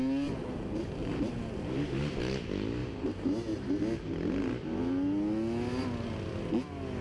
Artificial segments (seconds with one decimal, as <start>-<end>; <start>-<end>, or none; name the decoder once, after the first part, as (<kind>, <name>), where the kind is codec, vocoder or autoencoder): 1.0-2.0 (vocoder, BigVGAN v2); 2.8-3.8